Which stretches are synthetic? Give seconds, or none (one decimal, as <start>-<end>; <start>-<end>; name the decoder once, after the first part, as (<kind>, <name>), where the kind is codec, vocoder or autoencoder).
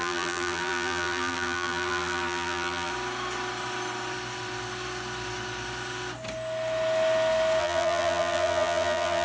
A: 0.0-2.9 (vocoder, BigVGAN v2); 7.6-9.2